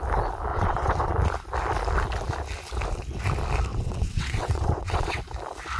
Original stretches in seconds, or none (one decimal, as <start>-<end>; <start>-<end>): 0.0-0.5; 1.1-3.7; 5.2-5.8